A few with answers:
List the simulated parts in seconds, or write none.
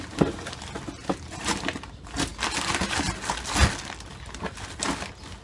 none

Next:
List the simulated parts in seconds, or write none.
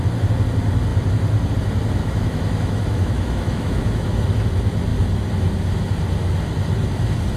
2.0-4.4 (autoencoder, DAC-VAE)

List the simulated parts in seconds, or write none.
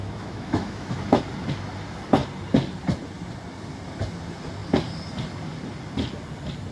0.0-1.2 (autoencoder, DAC-VAE)